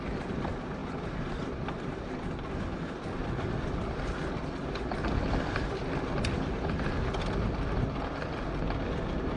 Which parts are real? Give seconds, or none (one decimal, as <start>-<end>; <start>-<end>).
0.0-0.8; 4.3-9.4